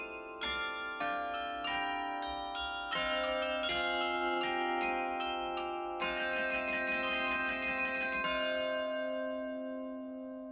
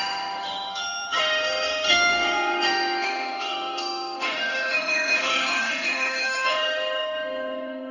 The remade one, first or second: second